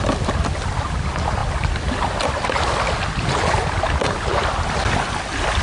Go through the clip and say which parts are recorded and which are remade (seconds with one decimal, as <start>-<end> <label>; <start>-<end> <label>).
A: 0.0-5.6 recorded